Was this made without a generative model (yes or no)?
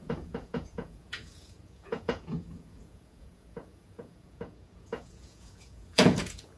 no